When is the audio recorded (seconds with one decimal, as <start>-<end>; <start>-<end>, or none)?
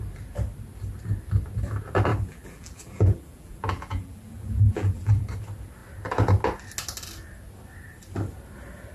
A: 0.0-2.1; 5.2-8.9